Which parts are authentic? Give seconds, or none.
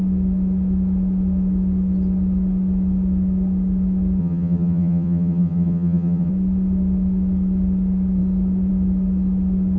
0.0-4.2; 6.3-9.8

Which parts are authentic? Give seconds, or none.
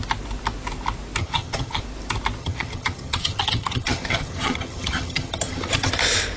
0.0-1.2; 1.8-2.4; 5.9-6.4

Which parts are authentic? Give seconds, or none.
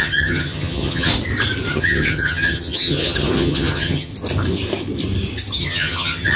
1.1-1.7; 4.1-5.6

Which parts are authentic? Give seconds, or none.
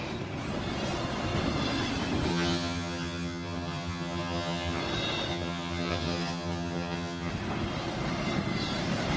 0.0-2.3; 4.8-5.3; 7.3-9.2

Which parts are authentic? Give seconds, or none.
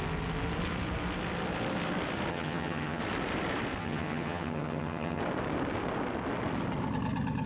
0.0-2.3; 3.0-3.8; 5.2-7.5